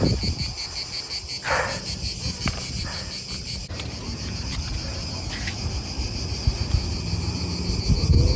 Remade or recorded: recorded